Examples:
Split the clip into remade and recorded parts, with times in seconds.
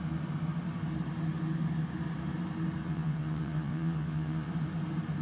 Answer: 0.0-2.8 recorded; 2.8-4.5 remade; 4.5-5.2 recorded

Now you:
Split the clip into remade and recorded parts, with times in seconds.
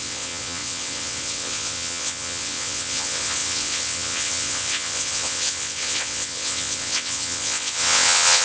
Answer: 0.0-8.4 remade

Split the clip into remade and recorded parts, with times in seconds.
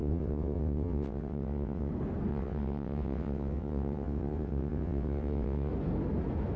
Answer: 0.0-1.9 remade; 1.9-2.3 recorded; 2.3-5.7 remade; 5.7-6.6 recorded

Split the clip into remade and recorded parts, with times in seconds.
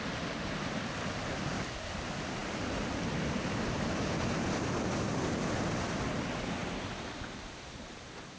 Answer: 0.0-8.4 recorded